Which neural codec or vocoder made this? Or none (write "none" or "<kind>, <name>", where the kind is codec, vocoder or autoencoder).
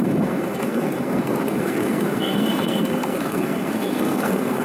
codec, SNAC